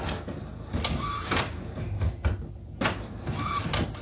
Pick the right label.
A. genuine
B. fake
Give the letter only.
A